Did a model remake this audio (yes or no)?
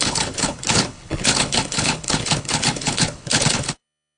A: yes